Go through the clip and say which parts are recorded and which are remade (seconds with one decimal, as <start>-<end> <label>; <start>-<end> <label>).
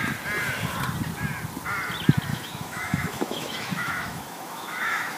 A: 0.0-2.3 recorded; 2.3-5.2 remade